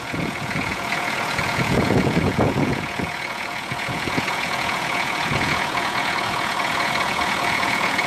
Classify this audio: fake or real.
fake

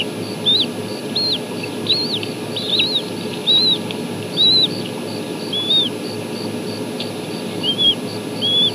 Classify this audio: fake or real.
real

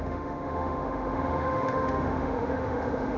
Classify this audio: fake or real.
fake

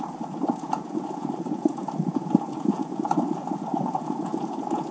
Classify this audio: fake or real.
fake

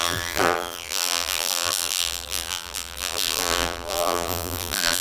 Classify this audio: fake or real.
fake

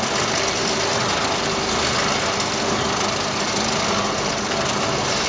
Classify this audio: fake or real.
real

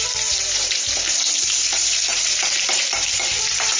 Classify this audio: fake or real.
fake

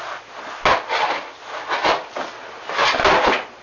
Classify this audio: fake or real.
real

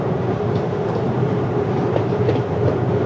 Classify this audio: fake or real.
real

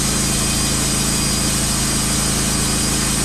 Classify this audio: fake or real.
real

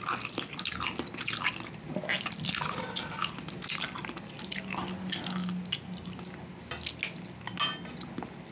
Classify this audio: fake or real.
real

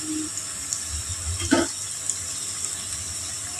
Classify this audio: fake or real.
real